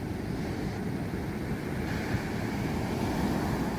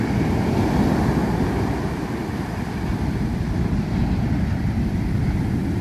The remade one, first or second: second